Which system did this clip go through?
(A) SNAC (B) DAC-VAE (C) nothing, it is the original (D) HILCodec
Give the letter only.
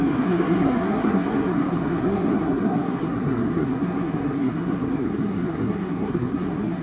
A